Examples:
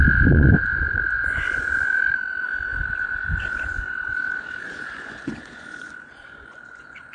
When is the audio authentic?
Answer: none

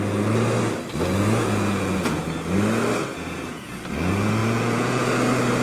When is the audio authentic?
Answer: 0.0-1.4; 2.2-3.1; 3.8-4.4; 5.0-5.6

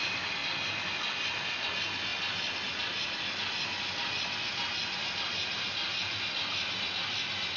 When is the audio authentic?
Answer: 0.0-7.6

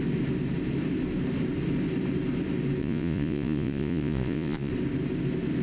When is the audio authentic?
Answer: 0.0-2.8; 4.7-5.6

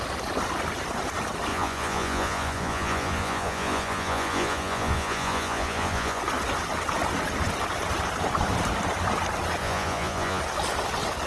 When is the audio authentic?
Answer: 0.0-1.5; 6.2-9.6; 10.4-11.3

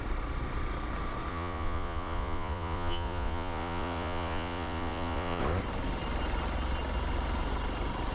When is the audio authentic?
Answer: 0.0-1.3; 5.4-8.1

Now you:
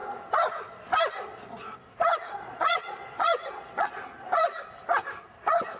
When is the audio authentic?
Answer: 0.0-2.3; 4.0-5.8